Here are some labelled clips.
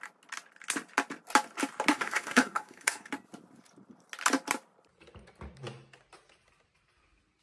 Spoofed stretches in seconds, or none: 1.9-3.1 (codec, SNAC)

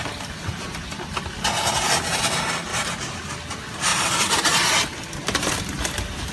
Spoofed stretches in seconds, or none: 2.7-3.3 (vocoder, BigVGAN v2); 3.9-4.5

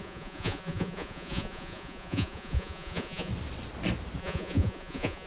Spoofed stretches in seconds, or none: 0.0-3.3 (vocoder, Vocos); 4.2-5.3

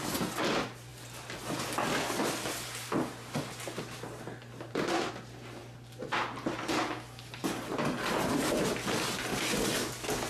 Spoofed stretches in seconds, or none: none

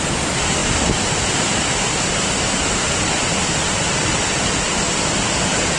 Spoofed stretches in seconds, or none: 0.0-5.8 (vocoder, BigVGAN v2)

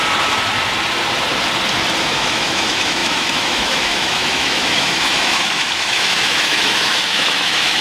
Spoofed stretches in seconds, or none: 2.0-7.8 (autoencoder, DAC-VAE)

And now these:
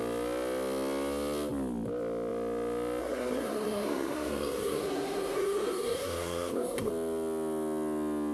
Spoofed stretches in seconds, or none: 3.0-6.9 (codec, SNAC)